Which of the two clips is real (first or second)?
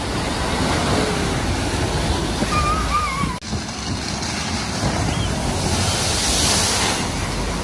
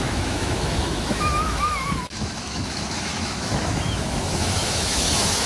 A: first